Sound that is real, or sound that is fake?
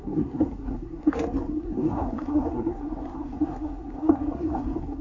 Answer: fake